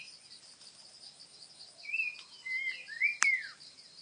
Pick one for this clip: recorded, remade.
recorded